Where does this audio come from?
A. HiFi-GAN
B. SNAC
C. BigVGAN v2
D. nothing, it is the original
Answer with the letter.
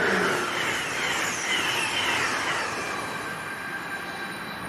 D